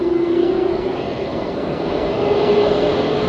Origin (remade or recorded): remade